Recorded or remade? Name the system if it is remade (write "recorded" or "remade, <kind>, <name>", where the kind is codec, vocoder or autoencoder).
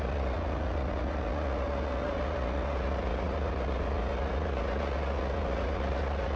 remade, vocoder, Vocos